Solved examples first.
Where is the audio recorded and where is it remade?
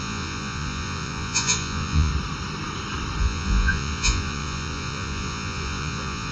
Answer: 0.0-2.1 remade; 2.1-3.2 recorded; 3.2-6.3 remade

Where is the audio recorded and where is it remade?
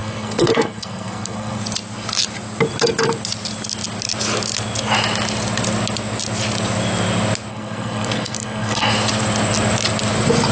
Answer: 0.0-1.6 remade; 1.6-7.5 recorded; 7.5-8.9 remade; 8.9-10.5 recorded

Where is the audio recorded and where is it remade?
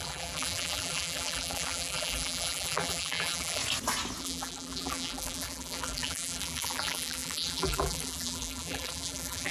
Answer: 0.0-3.6 remade; 3.6-4.2 recorded; 4.2-9.5 remade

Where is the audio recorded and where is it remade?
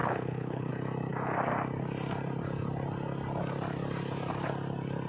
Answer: 0.0-0.7 remade; 0.7-5.1 recorded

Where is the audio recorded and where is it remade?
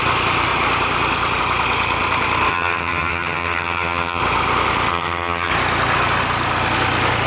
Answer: 0.0-2.5 recorded; 2.5-4.2 remade; 4.2-4.9 recorded; 4.9-5.5 remade; 5.5-7.3 recorded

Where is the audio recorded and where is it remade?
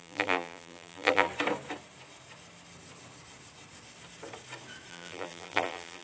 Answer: 0.0-1.3 remade; 1.3-4.9 recorded; 4.9-6.0 remade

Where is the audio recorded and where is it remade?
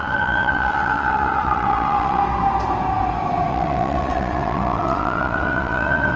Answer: 0.0-2.2 remade; 2.2-3.5 recorded; 3.5-6.2 remade